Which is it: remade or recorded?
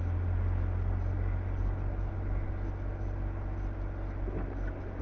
recorded